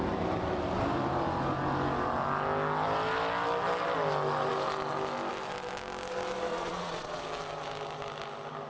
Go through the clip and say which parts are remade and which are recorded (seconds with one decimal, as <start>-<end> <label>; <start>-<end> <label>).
0.0-6.5 recorded; 6.5-7.2 remade; 7.2-8.7 recorded